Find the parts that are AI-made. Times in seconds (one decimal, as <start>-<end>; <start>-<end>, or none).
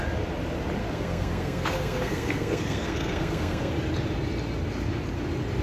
0.8-3.7